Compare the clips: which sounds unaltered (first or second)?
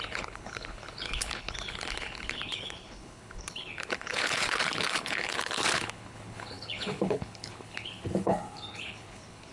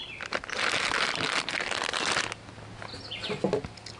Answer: second